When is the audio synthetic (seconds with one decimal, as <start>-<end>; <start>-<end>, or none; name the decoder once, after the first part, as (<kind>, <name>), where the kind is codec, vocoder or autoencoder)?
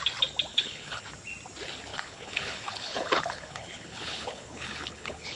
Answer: 0.5-1.0 (codec, HILCodec); 1.9-5.4